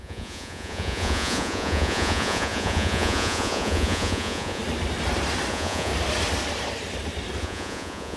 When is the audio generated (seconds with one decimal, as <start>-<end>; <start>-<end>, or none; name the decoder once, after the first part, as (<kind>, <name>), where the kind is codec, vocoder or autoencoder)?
0.0-4.6 (vocoder, Vocos); 5.5-5.9; 7.4-8.2